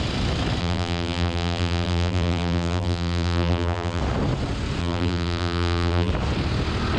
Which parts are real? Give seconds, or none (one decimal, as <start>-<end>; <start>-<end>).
0.0-0.6; 4.0-4.8; 6.1-7.0